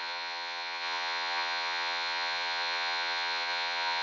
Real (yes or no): no